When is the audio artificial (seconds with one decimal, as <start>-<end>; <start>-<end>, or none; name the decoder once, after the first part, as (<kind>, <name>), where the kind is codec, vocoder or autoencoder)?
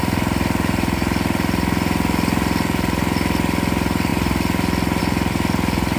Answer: none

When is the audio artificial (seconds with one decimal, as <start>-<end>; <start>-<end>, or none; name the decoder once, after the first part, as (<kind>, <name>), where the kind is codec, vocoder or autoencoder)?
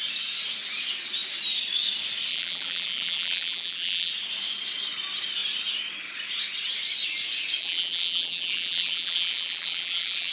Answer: 2.3-4.1 (vocoder, BigVGAN v2); 7.6-10.3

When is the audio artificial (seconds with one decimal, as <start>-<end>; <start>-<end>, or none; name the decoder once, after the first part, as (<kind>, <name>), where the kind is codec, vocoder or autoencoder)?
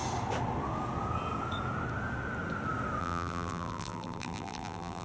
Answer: 3.0-5.0 (vocoder, BigVGAN v2)